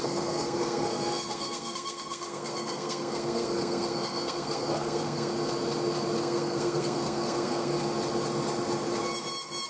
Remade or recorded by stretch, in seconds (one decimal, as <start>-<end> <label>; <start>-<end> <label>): 0.0-5.3 remade; 5.3-6.2 recorded; 6.2-7.7 remade; 7.7-9.7 recorded